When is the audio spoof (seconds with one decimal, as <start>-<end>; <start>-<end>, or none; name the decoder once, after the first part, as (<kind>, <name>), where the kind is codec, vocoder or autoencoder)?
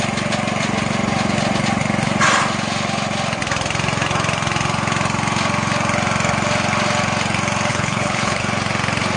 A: 7.7-8.4 (codec, HILCodec)